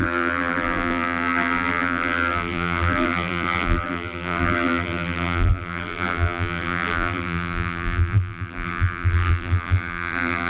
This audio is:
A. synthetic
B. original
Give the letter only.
A